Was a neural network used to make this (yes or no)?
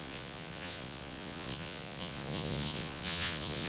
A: yes